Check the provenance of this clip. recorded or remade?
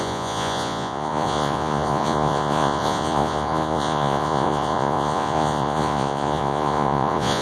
remade